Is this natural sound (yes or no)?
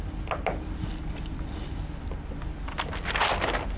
yes